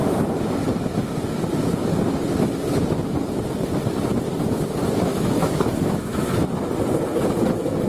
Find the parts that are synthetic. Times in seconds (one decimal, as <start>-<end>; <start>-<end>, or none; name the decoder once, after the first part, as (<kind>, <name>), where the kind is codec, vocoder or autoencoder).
5.1-6.5 (autoencoder, DAC-VAE)